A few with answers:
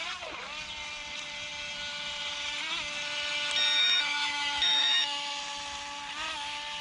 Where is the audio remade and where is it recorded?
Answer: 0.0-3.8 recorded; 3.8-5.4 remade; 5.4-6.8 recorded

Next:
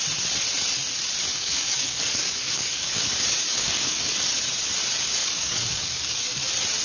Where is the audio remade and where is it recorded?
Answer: 0.0-1.3 recorded; 1.3-4.2 remade; 4.2-5.2 recorded; 5.2-6.2 remade; 6.2-6.8 recorded

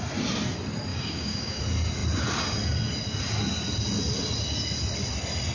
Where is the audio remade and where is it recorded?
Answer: 0.0-0.9 recorded; 0.9-1.6 remade; 1.6-5.5 recorded

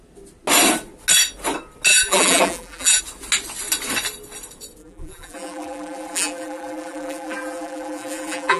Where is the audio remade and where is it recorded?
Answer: 0.0-1.9 recorded; 1.9-3.0 remade; 3.0-4.8 recorded; 4.8-8.6 remade

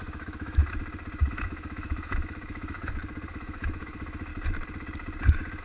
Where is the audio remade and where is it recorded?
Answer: 0.0-0.6 remade; 0.6-1.3 recorded; 1.3-2.8 remade; 2.8-3.3 recorded; 3.3-4.3 remade; 4.3-5.6 recorded

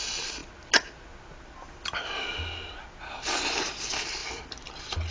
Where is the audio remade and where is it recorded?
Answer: 0.0-5.1 recorded